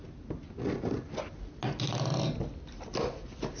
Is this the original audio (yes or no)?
yes